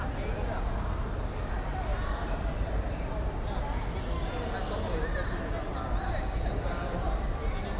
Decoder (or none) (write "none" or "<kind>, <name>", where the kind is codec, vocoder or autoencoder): none